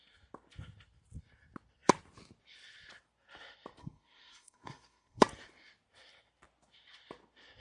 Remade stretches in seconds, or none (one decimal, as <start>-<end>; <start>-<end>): 3.8-5.2